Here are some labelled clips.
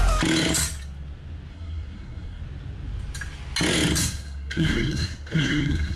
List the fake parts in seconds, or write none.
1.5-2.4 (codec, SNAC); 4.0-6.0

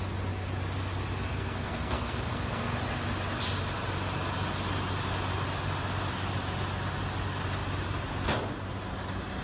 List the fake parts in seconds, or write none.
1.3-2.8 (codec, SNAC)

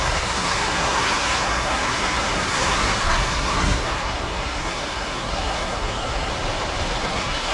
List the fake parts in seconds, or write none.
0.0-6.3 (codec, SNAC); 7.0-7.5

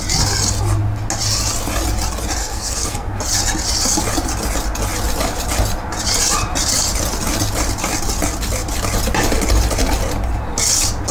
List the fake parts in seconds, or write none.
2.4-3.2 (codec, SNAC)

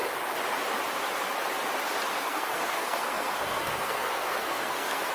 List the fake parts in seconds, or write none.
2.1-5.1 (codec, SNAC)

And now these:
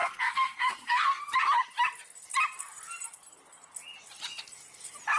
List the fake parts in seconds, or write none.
0.0-1.2 (codec, SNAC)

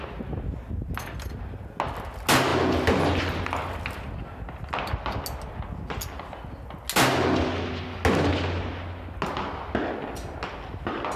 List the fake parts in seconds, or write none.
none

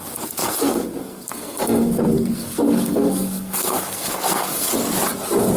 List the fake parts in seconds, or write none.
0.0-4.7 (codec, SNAC)